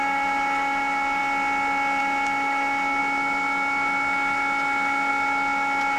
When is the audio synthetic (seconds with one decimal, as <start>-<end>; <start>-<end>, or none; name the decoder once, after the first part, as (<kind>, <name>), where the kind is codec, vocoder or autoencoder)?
0.0-1.2 (autoencoder, DAC-VAE); 2.0-6.0